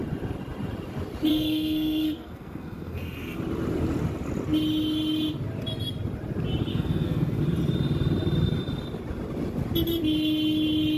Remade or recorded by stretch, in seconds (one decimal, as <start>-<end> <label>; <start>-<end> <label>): 0.0-1.3 recorded; 1.3-3.4 remade; 3.4-6.7 recorded; 6.7-7.4 remade; 7.4-11.0 recorded